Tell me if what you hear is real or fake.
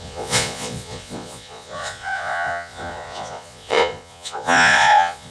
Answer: fake